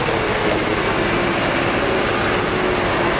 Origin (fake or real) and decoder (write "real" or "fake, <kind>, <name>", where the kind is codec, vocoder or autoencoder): real